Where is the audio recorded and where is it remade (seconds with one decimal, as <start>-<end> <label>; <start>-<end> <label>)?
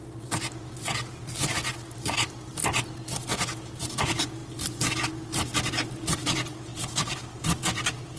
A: 0.0-8.2 recorded